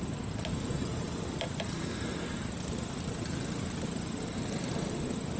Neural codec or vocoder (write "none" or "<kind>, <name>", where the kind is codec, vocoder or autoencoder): vocoder, BigVGAN v2